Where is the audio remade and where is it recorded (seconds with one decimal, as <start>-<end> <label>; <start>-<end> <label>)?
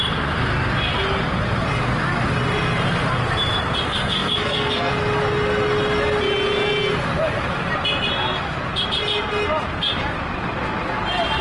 0.0-3.9 recorded; 3.9-4.9 remade; 4.9-11.4 recorded